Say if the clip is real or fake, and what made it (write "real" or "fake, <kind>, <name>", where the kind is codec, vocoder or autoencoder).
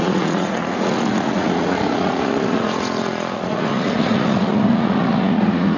fake, vocoder, Vocos